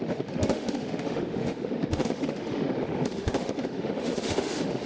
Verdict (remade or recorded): remade